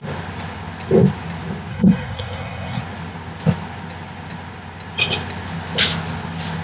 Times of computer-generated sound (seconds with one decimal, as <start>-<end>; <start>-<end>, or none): 1.7-2.8